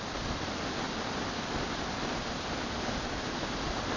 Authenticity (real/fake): real